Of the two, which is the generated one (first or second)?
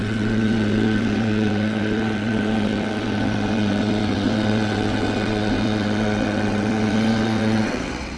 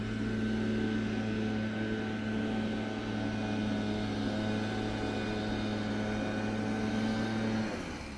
first